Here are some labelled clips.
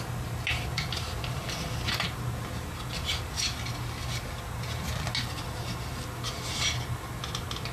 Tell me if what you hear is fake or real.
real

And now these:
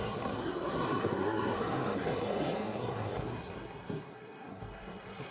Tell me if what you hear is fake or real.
fake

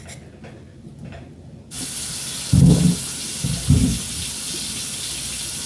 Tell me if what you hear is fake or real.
real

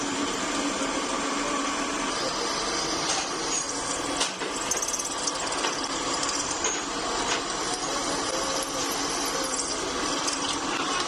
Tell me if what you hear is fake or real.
real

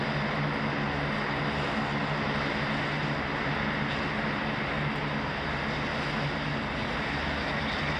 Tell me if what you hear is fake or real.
real